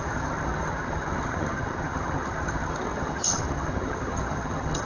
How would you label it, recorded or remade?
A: remade